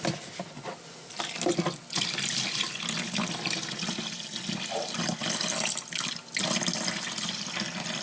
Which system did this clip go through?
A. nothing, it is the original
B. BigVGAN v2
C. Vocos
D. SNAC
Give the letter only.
A